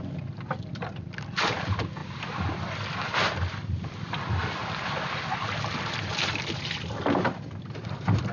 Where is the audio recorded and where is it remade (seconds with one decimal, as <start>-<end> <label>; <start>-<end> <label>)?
0.0-8.3 recorded